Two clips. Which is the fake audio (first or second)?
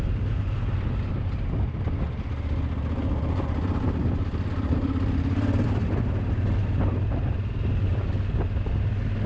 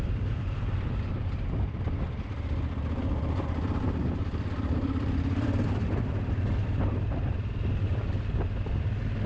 second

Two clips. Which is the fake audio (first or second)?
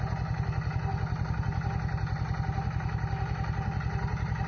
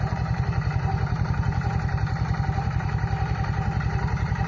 second